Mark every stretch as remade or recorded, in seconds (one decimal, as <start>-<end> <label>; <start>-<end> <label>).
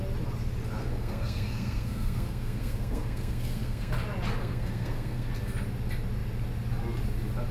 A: 0.0-0.8 recorded; 0.8-3.9 remade; 3.9-4.4 recorded; 4.4-5.3 remade; 5.3-7.5 recorded